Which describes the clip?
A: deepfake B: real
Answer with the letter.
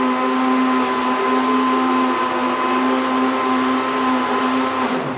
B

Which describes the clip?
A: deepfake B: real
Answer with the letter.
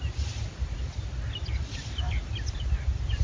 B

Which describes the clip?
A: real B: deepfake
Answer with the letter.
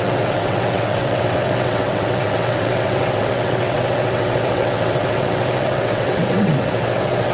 B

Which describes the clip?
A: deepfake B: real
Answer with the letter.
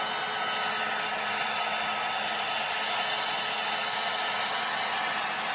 B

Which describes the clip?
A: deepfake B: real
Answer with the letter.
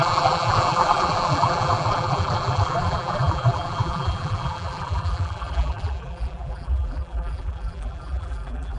A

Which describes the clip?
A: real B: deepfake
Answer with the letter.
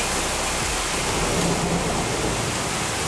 A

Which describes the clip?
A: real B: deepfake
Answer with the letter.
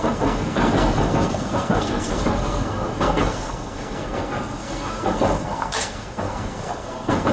B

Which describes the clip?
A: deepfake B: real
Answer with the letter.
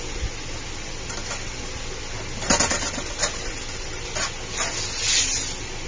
B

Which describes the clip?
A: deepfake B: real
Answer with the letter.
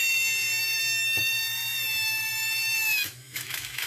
A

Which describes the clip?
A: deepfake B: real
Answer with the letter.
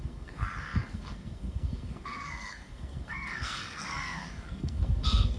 A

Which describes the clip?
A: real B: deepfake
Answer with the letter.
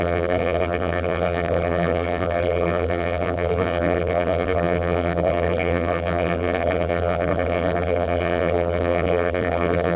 B